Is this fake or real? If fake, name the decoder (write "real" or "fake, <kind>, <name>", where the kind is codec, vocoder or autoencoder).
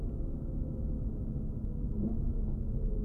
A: real